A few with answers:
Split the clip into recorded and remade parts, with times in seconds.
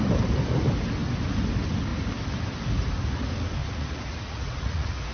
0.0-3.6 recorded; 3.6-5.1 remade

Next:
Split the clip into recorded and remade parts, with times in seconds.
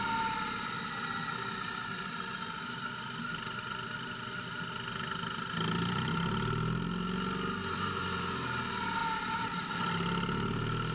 0.0-9.0 recorded; 9.0-9.9 remade; 9.9-10.9 recorded